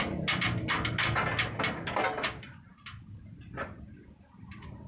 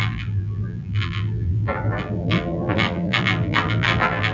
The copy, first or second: second